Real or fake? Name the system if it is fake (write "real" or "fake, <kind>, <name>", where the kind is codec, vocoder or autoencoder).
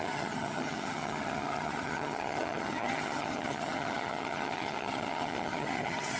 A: fake, vocoder, HiFi-GAN